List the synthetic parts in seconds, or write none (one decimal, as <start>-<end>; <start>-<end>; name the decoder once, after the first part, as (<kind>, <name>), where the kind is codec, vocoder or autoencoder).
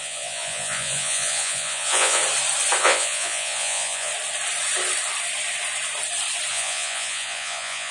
0.0-2.2 (vocoder, Vocos); 2.8-4.1; 6.5-7.9